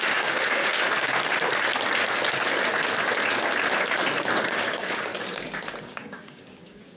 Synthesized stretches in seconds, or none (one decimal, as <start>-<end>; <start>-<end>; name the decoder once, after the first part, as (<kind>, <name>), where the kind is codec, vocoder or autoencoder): 0.0-0.7 (codec, DAC); 4.5-5.1; 5.8-7.0